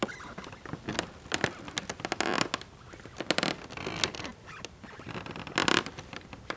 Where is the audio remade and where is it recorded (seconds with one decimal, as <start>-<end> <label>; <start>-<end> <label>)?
0.0-6.6 recorded